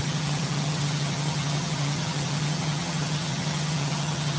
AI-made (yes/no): yes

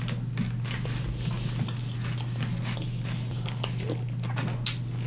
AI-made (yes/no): no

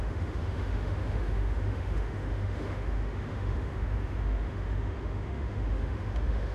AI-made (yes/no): yes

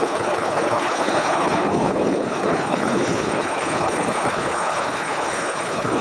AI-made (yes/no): yes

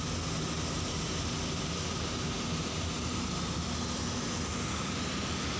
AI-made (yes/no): no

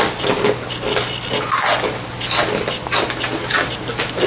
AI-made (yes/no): no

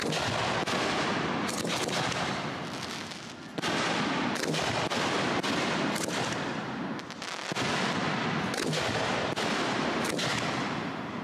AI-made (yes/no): no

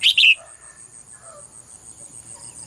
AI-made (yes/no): no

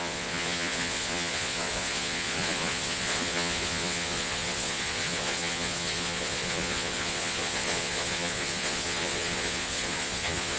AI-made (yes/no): yes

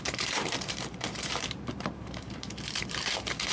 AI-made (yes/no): yes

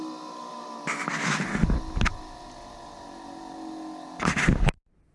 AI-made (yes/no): no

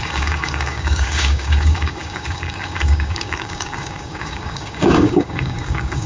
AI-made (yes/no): yes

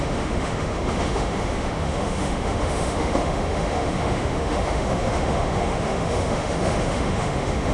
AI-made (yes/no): yes